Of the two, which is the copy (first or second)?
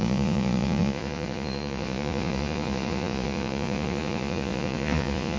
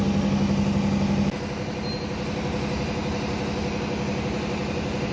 first